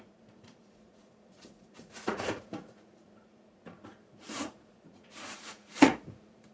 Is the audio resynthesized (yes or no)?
yes